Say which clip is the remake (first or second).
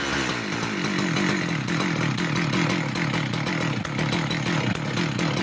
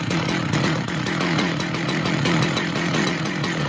second